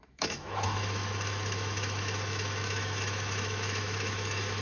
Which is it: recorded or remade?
remade